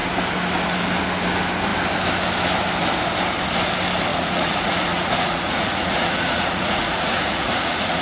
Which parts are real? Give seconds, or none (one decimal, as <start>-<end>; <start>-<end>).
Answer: 0.0-4.1